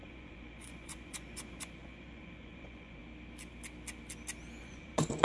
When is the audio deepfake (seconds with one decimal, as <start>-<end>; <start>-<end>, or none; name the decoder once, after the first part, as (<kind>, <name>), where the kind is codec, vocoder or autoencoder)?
0.0-3.0 (vocoder, Vocos); 4.6-5.2